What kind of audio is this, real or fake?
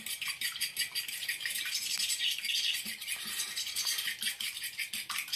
real